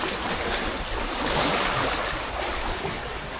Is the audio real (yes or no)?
yes